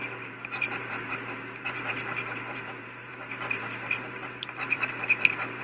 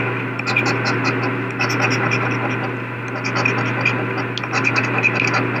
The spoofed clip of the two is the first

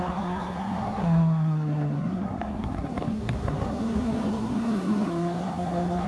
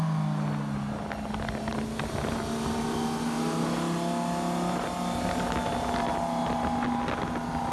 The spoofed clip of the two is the first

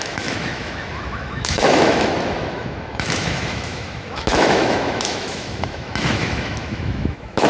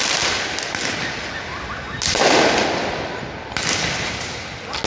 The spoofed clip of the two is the first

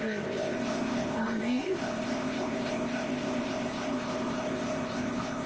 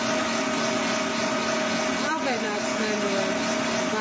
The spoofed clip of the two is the first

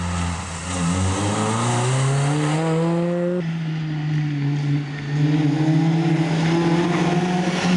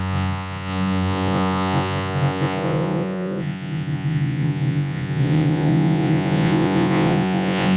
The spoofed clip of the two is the second